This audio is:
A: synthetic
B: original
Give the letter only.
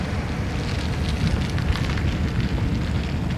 B